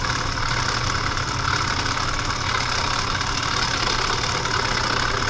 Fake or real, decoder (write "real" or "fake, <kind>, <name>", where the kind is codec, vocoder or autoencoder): real